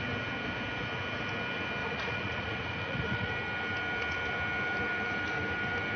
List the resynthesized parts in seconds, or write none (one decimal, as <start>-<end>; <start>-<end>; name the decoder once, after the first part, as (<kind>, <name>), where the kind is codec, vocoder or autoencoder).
1.8-3.3 (vocoder, Vocos)